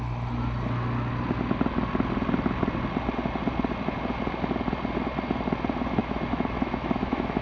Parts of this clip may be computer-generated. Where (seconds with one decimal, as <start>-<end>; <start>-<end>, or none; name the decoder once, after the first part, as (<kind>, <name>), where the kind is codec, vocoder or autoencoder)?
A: 6.0-7.4 (autoencoder, DAC-VAE)